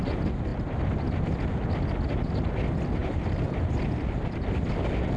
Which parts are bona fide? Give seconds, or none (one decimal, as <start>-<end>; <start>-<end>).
0.0-3.0